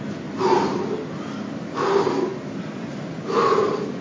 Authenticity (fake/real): real